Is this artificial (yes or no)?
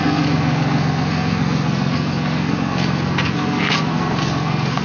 yes